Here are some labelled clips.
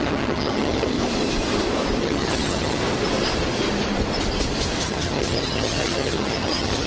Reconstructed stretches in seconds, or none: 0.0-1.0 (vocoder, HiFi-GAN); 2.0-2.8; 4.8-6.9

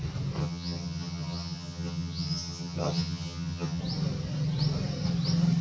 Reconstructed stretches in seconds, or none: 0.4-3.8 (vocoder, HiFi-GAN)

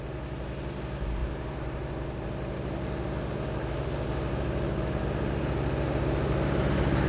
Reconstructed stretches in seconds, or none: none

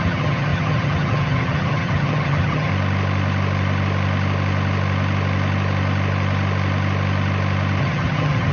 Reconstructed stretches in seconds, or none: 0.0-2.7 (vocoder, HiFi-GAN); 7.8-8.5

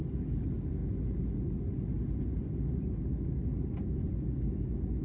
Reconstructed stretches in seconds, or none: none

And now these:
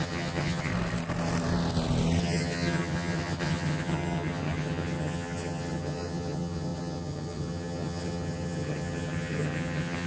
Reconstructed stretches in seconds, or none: 0.0-0.7 (vocoder, HiFi-GAN); 2.2-10.1

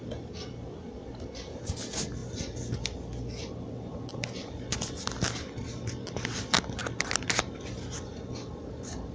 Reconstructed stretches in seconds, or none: none

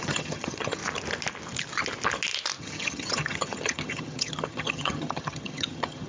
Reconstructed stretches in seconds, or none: 0.0-0.8 (vocoder, HiFi-GAN); 2.6-6.1